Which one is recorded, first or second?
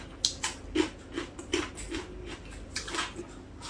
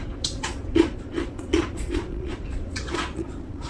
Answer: first